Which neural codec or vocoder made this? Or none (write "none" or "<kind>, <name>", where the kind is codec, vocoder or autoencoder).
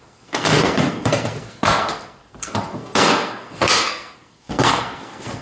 codec, SNAC